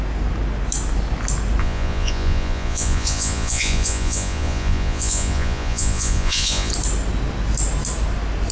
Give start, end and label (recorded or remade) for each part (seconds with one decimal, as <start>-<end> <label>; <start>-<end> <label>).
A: 0.0-1.6 recorded; 1.6-6.7 remade; 6.7-8.5 recorded